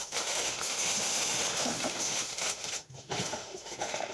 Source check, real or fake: fake